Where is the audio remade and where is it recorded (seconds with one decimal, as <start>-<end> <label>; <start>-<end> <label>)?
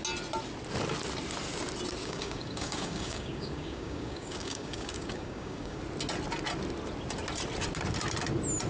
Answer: 0.0-2.0 recorded; 2.0-5.8 remade; 5.8-8.7 recorded